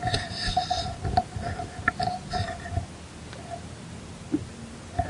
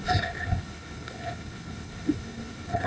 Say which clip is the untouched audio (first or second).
first